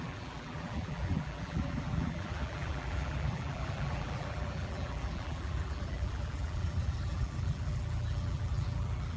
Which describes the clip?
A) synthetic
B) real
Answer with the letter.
A